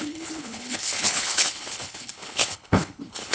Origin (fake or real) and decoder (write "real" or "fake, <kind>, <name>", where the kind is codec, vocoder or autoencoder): fake, codec, HILCodec